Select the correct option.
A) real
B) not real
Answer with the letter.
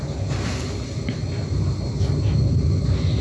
A